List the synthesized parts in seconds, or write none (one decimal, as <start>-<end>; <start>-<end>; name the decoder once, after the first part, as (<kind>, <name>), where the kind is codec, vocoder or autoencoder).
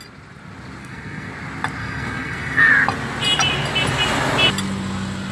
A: 0.8-1.3 (codec, SNAC); 1.8-2.7